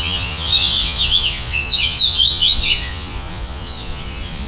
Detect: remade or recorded remade